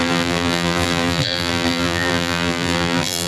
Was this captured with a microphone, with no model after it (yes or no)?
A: no